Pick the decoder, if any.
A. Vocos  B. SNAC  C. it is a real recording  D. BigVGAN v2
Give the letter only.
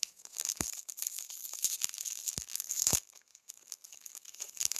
B